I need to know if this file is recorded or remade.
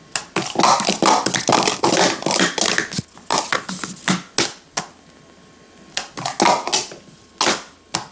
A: recorded